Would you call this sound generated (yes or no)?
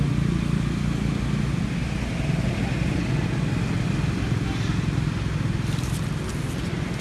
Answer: no